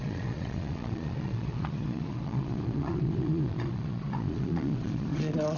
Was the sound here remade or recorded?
remade